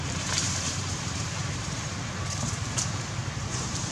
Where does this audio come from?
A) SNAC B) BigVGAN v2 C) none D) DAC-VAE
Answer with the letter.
B